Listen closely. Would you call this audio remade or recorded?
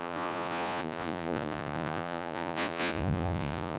remade